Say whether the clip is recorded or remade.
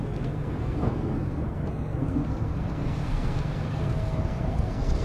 remade